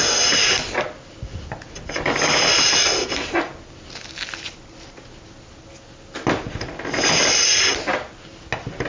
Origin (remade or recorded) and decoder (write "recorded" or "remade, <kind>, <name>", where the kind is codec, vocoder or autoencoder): recorded